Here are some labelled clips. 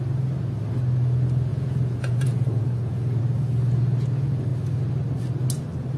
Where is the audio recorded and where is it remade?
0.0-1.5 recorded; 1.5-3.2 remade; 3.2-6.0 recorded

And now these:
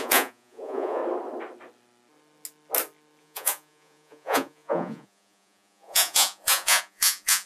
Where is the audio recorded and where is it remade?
0.0-1.0 remade; 1.0-3.2 recorded; 3.2-7.5 remade

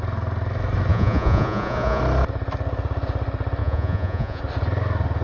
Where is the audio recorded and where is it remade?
0.0-0.9 recorded; 0.9-2.0 remade; 2.0-3.6 recorded; 3.6-4.4 remade; 4.4-5.2 recorded

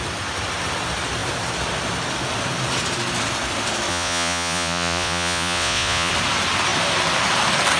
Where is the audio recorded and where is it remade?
0.0-3.9 recorded; 3.9-6.1 remade; 6.1-7.8 recorded

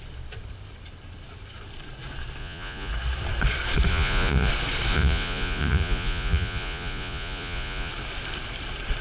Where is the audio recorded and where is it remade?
0.0-2.4 recorded; 2.4-2.9 remade; 2.9-3.9 recorded; 3.9-4.5 remade; 4.5-4.9 recorded; 4.9-7.9 remade; 7.9-9.0 recorded

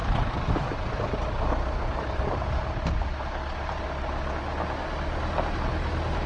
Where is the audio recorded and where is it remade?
0.0-6.3 recorded

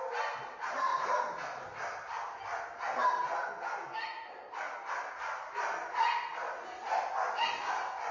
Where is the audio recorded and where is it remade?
0.0-8.1 recorded